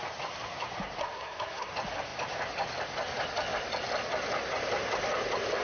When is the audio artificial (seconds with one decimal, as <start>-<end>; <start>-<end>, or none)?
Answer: 1.0-1.7